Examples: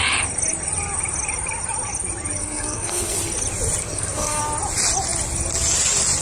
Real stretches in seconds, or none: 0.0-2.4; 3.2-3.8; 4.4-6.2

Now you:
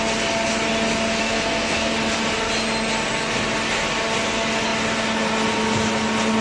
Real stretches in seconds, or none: 0.0-1.2; 1.9-6.4

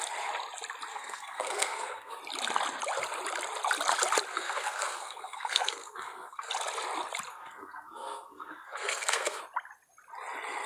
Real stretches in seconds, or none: 0.0-0.9; 2.2-4.3; 6.5-7.3; 9.4-10.7

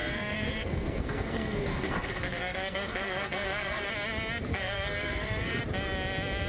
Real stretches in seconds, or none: 3.9-4.5; 5.6-6.5

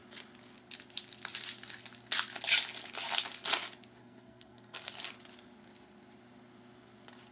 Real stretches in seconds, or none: 0.0-4.0; 4.9-7.3

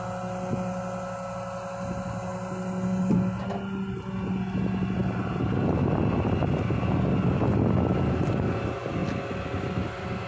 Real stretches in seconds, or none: 0.0-10.3